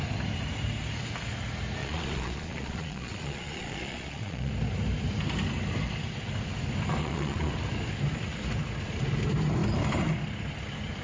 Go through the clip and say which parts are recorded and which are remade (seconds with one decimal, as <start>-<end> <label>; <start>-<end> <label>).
0.0-1.8 recorded; 1.8-4.5 remade; 4.5-7.0 recorded; 7.0-7.5 remade; 7.5-11.0 recorded